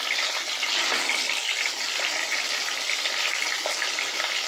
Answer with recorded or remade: recorded